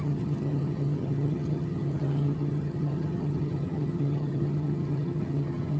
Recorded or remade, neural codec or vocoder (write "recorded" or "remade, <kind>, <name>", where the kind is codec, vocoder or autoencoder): remade, vocoder, HiFi-GAN